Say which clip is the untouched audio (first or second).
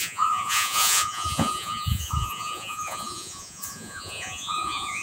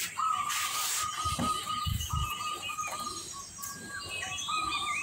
second